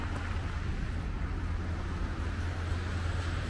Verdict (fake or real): real